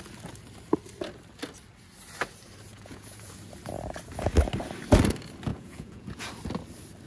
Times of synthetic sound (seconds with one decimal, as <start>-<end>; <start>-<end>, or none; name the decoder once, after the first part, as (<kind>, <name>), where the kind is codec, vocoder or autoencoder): 2.7-3.3 (vocoder, Vocos); 5.5-6.3